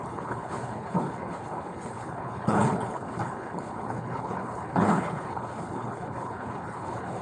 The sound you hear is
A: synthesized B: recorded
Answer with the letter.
A